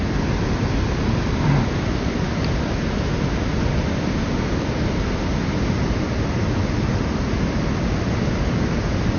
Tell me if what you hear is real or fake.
real